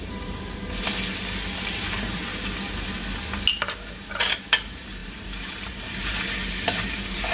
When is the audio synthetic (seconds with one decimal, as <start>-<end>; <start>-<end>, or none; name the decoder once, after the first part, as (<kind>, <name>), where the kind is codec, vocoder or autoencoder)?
0.0-0.9 (vocoder, BigVGAN v2); 1.7-2.2; 3.5-7.3